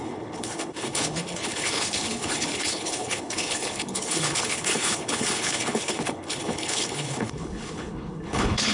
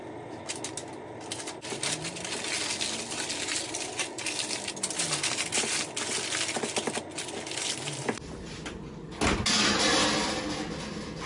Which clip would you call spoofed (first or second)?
first